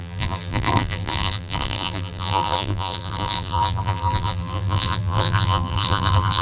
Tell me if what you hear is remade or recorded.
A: remade